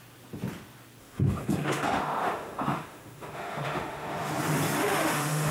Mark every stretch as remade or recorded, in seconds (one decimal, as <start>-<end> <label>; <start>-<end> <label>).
0.0-1.0 recorded; 1.0-4.3 remade; 4.3-4.8 recorded; 4.8-5.5 remade